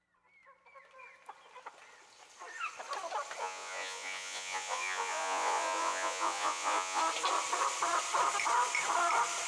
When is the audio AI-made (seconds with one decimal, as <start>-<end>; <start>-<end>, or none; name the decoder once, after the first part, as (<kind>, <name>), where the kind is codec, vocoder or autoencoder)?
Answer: 3.4-7.0 (vocoder, Vocos)